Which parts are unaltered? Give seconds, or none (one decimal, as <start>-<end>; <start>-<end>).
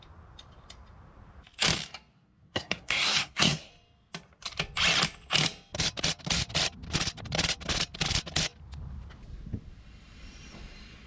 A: 0.0-2.1; 3.7-11.1